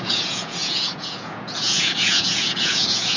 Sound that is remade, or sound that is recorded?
remade